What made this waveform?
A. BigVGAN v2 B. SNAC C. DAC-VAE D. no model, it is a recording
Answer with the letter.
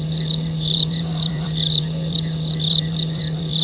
A